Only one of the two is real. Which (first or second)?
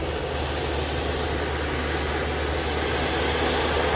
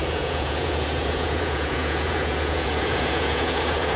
first